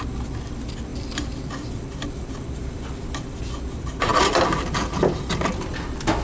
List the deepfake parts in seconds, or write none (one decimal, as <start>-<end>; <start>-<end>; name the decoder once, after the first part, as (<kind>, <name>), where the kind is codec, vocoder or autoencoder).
0.9-3.4 (vocoder, BigVGAN v2)